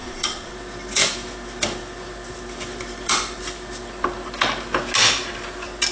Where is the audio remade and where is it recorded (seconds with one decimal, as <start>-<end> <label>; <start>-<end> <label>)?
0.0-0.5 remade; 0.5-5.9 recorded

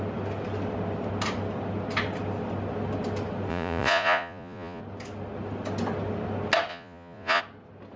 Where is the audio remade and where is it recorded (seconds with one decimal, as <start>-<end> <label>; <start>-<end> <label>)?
0.0-3.5 recorded; 3.5-4.8 remade; 4.8-6.7 recorded; 6.7-7.4 remade; 7.4-8.0 recorded

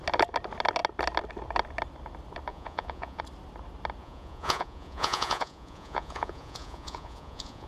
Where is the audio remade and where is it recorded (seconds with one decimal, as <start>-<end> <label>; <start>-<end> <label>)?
0.0-2.5 recorded; 2.5-3.2 remade; 3.2-4.0 recorded; 4.0-7.7 remade

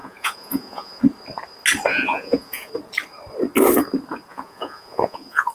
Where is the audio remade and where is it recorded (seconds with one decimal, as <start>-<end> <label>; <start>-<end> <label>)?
0.0-1.0 remade; 1.0-1.9 recorded; 1.9-2.7 remade; 2.7-4.3 recorded; 4.3-5.5 remade

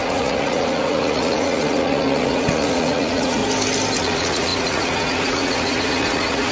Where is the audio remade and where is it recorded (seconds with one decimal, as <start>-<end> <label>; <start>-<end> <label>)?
0.0-3.4 remade; 3.4-4.0 recorded; 4.0-6.5 remade

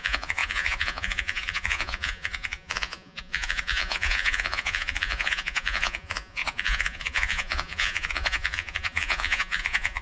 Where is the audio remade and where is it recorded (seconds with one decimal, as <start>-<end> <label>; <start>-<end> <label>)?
0.0-10.0 remade